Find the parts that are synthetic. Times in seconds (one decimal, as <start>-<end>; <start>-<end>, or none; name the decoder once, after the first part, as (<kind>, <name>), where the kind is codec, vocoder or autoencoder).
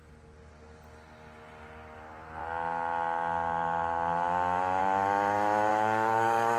5.7-6.6 (codec, DAC)